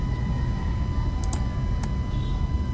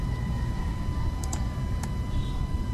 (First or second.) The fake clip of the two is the second